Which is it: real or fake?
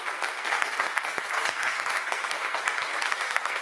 fake